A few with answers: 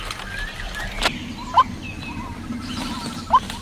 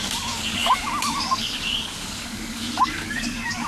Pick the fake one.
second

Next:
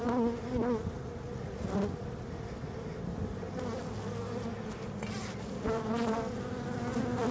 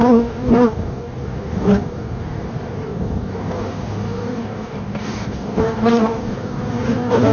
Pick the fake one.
second